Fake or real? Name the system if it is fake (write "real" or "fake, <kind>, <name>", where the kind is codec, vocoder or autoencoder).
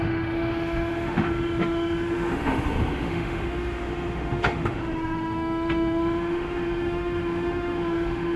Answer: fake, autoencoder, DAC-VAE